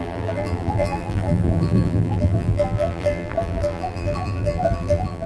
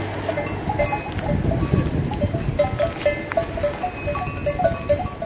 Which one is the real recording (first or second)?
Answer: second